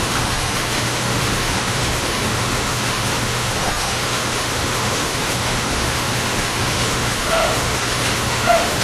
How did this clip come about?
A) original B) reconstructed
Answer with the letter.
B